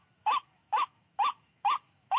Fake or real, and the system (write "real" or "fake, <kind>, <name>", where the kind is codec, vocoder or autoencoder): fake, autoencoder, DAC-VAE